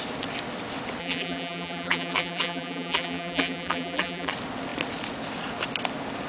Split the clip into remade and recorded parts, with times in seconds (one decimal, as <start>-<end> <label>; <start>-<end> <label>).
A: 0.0-1.0 recorded; 1.0-4.3 remade; 4.3-6.3 recorded